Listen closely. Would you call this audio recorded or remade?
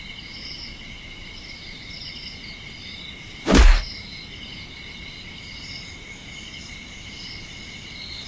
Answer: recorded